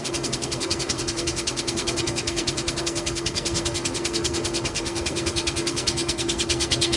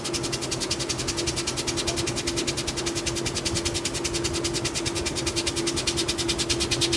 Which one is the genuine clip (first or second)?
second